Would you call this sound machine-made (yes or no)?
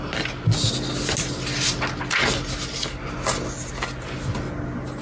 no